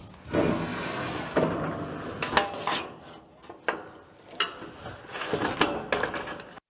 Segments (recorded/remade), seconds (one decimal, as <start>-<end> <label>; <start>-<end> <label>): 0.0-6.7 recorded